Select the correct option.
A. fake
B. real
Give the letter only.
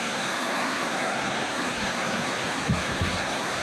A